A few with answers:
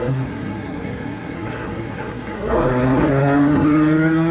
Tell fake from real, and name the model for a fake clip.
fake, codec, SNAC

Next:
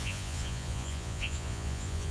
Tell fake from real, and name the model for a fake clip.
fake, vocoder, Vocos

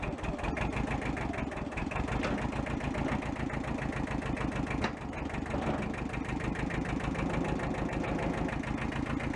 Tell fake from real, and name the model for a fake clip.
real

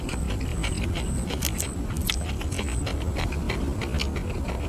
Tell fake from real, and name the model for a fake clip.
real